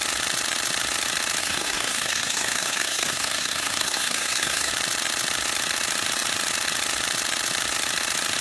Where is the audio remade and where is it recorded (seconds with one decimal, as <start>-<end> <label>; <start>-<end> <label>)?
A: 0.0-1.4 recorded; 1.4-4.7 remade; 4.7-8.4 recorded